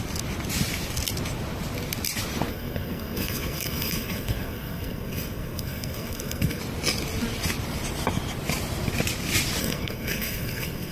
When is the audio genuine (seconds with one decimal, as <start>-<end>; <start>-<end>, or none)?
0.0-2.5; 6.6-9.6